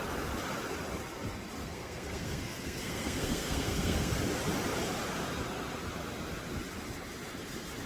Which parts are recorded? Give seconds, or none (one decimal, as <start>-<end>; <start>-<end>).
0.0-1.6; 4.1-7.9